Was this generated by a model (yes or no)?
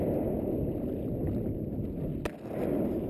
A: no